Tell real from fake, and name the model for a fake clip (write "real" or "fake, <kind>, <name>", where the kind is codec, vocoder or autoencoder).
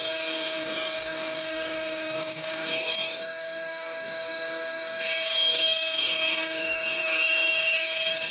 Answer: fake, codec, DAC